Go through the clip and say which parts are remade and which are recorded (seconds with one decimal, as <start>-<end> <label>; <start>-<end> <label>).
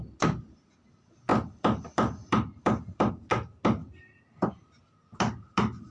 0.0-1.3 recorded; 1.3-3.1 remade; 3.1-5.9 recorded